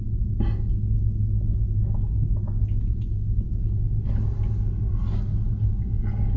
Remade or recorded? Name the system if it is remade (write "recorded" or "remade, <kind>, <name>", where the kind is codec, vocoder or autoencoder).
recorded